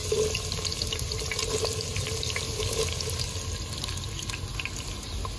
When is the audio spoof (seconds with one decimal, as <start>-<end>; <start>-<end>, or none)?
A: none